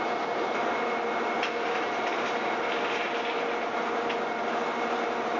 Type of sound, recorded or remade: recorded